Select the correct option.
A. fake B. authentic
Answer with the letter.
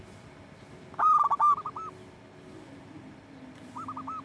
B